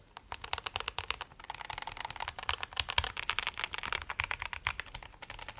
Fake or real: real